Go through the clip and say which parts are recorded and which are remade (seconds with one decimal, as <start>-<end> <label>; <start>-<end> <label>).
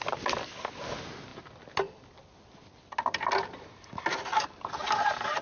0.0-5.4 recorded